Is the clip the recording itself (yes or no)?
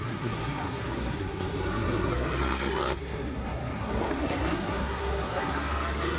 no